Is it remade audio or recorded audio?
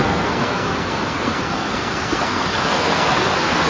remade